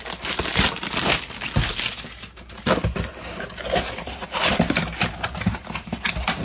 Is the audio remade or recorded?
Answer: recorded